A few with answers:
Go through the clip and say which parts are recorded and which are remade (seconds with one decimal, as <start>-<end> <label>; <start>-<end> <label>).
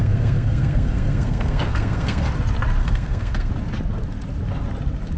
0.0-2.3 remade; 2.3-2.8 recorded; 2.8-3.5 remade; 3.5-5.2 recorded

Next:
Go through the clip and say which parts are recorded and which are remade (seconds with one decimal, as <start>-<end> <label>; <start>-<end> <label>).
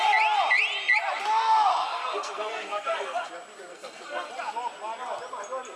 0.0-1.7 recorded; 1.7-3.3 remade; 3.3-3.7 recorded; 3.7-4.3 remade; 4.3-5.8 recorded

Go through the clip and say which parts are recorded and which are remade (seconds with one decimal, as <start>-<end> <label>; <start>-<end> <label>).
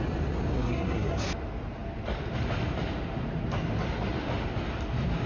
0.0-0.5 recorded; 0.5-1.3 remade; 1.3-5.3 recorded